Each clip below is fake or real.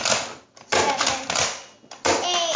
real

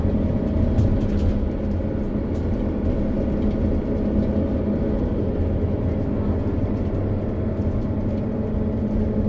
real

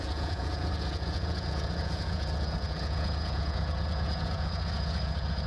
fake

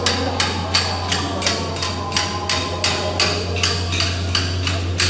real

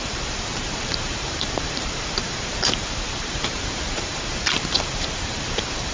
fake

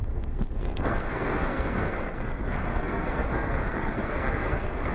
fake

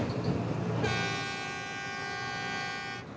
real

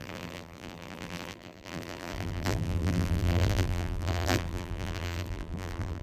fake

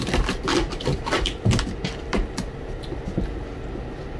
real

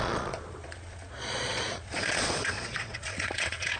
fake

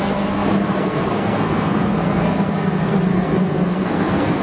fake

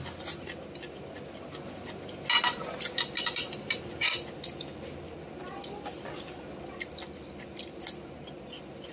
real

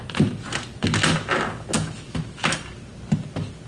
real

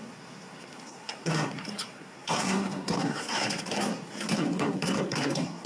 fake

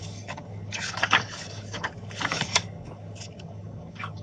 fake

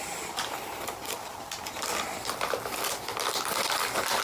real